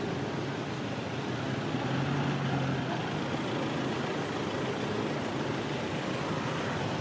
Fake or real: real